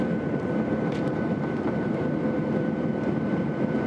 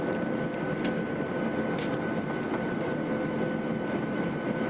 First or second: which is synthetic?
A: first